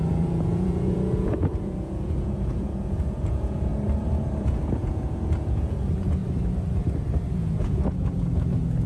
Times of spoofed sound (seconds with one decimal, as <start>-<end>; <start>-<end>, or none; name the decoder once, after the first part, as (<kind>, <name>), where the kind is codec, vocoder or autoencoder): 0.0-3.7 (vocoder, Vocos); 4.4-6.2; 7.3-8.9